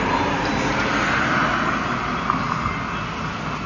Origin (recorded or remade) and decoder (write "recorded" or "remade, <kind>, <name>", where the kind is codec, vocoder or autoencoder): recorded